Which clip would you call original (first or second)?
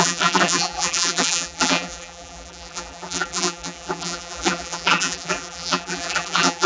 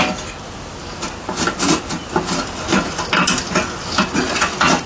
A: second